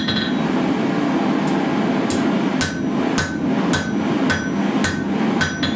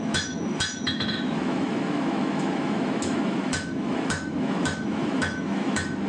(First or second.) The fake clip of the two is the second